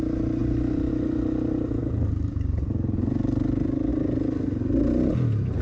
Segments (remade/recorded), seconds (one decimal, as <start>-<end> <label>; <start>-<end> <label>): 0.0-1.8 recorded; 1.8-2.7 remade; 2.7-5.6 recorded